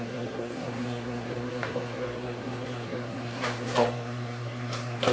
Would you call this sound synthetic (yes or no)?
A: yes